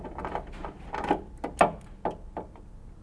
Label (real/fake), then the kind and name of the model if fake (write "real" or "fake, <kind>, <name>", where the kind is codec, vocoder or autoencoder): real